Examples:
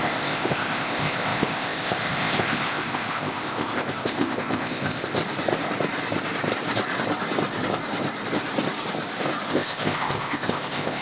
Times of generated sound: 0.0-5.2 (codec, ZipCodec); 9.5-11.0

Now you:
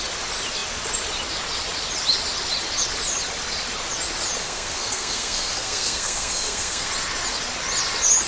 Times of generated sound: 4.4-6.9 (codec, SNAC)

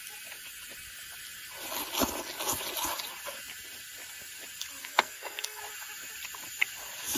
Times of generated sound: 4.8-5.6 (codec, SNAC)

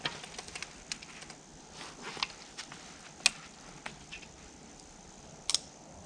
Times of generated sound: none

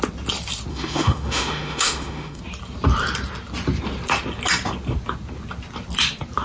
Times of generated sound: 0.7-2.4 (autoencoder, DAC-VAE)